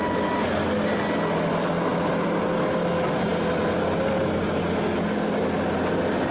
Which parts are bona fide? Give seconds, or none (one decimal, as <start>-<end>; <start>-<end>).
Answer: 0.0-6.3

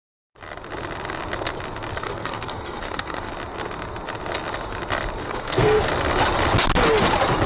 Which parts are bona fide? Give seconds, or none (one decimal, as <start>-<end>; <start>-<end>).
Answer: 0.0-2.0; 3.3-5.2; 5.9-7.5